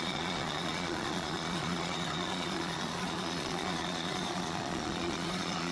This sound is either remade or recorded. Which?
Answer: remade